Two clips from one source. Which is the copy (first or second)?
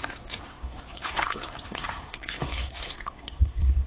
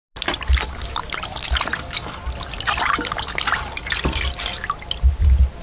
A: first